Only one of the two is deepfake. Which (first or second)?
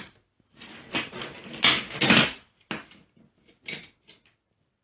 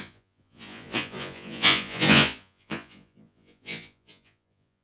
second